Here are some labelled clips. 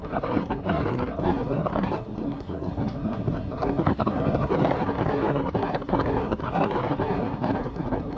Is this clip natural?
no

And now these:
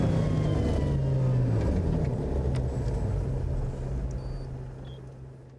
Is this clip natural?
yes